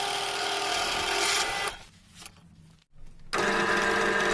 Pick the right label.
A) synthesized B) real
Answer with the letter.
B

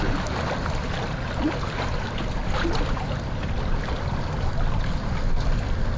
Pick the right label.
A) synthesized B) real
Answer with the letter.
B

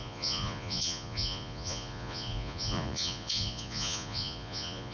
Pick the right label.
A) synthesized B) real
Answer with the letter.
A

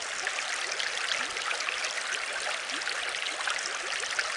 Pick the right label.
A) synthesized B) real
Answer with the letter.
B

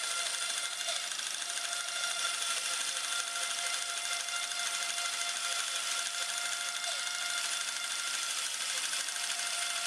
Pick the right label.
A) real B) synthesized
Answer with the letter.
A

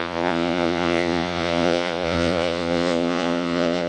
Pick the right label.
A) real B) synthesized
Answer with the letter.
B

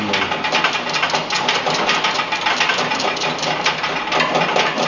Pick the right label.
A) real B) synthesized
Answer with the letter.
A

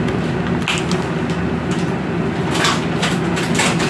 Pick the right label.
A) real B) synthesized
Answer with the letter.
A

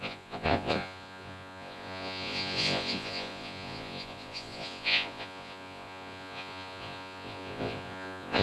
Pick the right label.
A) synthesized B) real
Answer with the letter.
A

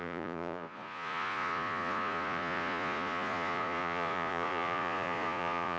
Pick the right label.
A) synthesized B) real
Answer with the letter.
A